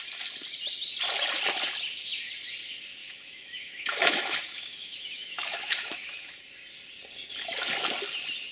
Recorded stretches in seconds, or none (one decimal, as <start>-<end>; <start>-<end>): 0.0-3.0; 6.4-8.5